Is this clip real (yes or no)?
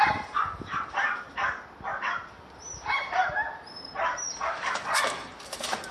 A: yes